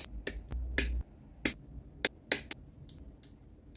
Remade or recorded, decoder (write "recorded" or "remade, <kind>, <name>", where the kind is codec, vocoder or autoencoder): recorded